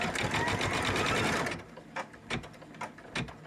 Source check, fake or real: real